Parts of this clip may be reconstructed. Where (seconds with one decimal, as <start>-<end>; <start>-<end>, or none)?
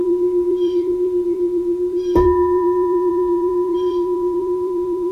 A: 0.0-5.1